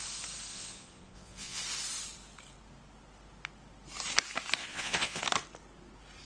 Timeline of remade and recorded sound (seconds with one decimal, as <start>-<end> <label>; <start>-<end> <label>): 0.0-0.5 recorded; 0.5-1.6 remade; 1.6-4.6 recorded; 4.6-5.2 remade; 5.2-6.2 recorded